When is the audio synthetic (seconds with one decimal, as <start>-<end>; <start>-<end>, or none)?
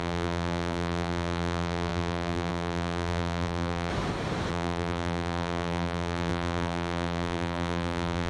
0.0-3.9; 4.5-8.3